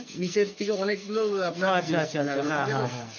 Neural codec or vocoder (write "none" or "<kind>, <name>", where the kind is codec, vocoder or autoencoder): codec, SNAC